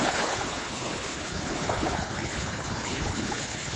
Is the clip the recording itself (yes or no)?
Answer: no